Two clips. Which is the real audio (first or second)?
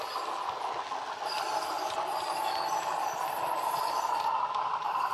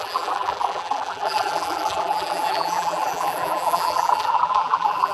first